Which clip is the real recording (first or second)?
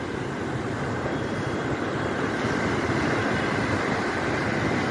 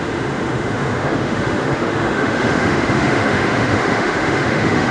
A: first